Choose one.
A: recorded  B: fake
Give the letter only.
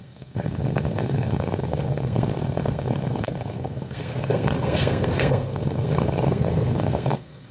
B